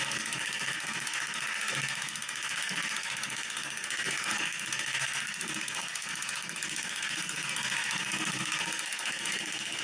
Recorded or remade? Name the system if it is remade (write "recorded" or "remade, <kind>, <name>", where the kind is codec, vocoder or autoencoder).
remade, codec, SNAC